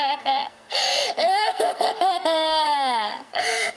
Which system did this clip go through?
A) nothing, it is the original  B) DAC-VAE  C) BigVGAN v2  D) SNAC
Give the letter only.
D